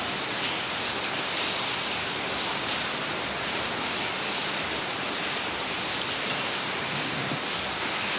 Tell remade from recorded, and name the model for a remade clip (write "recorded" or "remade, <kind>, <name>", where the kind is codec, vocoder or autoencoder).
recorded